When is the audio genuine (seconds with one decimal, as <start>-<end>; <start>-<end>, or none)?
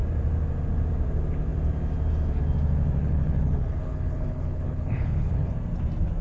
0.0-3.0; 5.5-6.2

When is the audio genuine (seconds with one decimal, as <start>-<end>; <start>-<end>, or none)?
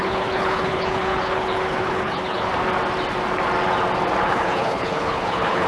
2.5-4.2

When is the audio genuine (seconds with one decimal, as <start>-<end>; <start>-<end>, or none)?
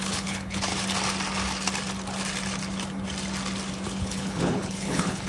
0.7-3.9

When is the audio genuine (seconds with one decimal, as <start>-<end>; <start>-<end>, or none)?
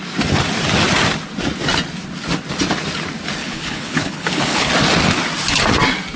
0.0-3.4; 4.7-6.2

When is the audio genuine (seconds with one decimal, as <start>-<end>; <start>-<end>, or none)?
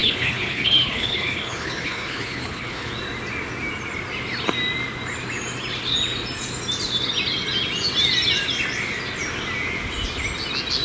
2.9-10.8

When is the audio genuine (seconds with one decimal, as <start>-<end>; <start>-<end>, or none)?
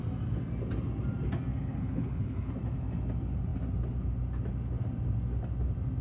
0.0-1.5; 2.5-6.0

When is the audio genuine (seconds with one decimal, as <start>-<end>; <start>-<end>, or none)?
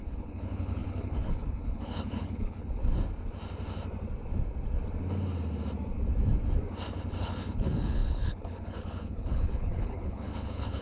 2.8-7.2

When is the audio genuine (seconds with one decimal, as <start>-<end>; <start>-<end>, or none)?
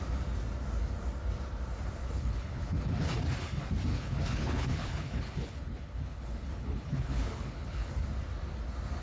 0.0-2.0; 3.1-3.9; 7.9-9.0